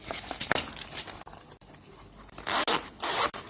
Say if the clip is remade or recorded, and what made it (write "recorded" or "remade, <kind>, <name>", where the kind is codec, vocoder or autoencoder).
recorded